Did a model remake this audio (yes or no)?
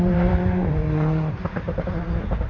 yes